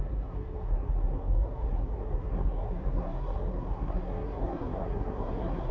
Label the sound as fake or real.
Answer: fake